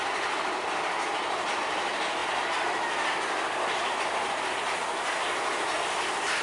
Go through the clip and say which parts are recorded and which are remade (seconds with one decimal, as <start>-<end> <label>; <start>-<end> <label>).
0.0-6.4 recorded